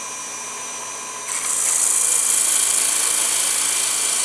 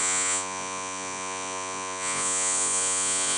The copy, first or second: second